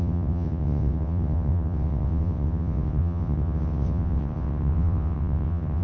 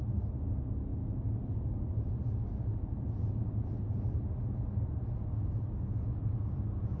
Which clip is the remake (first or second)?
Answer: first